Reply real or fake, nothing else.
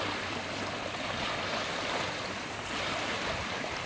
fake